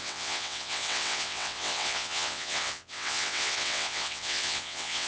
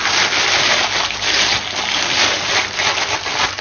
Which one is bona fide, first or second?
second